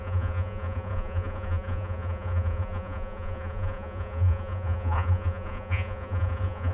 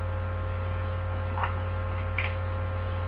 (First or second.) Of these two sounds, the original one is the second